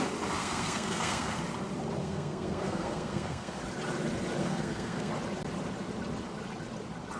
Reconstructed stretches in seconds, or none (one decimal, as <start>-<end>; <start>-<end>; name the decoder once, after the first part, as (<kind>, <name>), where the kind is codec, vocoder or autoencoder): 0.4-1.4 (codec, SNAC); 2.0-3.6; 4.4-5.1